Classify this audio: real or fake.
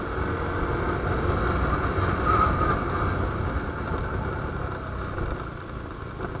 real